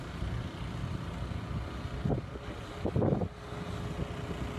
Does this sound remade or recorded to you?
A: recorded